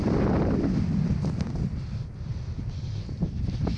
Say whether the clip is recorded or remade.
remade